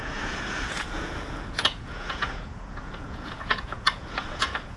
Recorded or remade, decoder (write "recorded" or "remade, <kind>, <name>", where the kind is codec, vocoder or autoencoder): remade, vocoder, Vocos